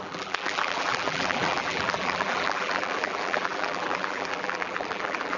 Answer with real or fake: fake